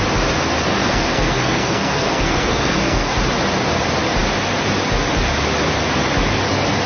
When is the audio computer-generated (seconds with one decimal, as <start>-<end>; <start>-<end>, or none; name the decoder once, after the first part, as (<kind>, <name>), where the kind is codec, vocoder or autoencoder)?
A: 0.8-3.1 (codec, SNAC)